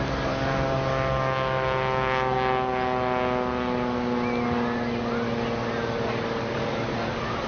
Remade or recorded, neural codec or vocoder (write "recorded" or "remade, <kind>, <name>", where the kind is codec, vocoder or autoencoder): recorded